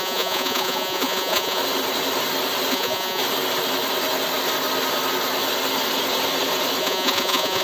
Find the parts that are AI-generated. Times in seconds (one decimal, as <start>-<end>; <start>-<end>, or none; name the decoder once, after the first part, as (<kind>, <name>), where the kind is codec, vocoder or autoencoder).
0.0-1.6 (vocoder, Vocos); 2.7-3.2; 6.8-7.6